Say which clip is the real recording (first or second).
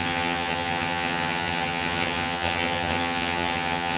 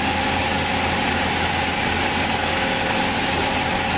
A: second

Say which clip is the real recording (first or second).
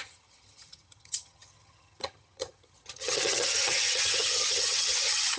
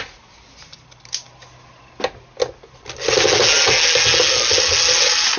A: second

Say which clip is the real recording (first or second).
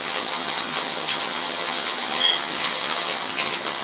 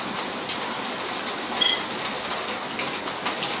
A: second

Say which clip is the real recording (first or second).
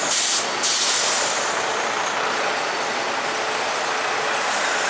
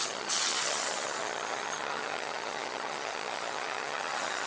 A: first